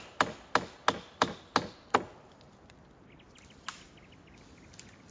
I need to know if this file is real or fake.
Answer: real